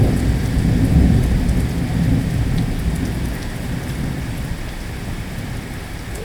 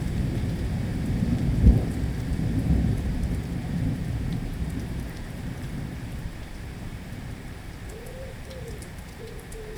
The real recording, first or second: first